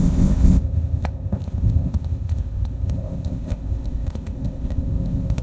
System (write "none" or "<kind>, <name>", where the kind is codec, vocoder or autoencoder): codec, ZipCodec